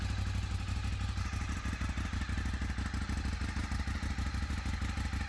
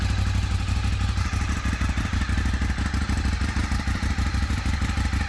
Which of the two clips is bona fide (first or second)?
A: first